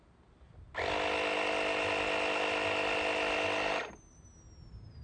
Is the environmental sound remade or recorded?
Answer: recorded